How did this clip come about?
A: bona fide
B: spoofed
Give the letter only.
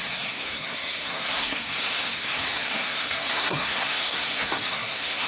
B